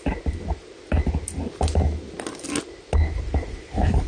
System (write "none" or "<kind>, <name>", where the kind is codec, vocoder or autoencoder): none